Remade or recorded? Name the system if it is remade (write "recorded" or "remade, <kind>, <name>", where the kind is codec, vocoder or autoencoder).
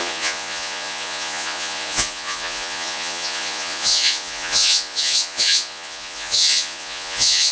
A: remade, vocoder, Vocos